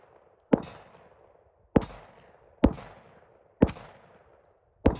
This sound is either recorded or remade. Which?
recorded